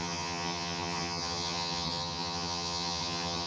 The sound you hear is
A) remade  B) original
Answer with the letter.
A